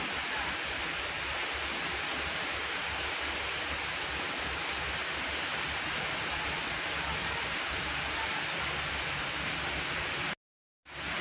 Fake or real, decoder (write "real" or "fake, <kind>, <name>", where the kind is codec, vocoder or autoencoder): real